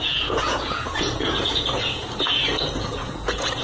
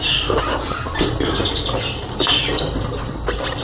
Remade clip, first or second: first